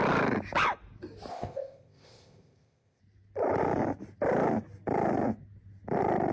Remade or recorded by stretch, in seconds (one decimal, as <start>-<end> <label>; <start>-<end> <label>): 0.0-1.3 recorded; 1.3-3.0 remade; 3.0-6.3 recorded